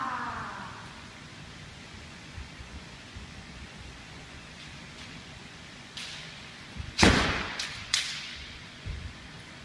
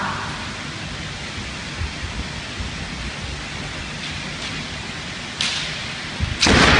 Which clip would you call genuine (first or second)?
second